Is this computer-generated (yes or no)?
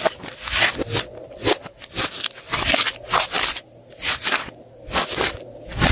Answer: no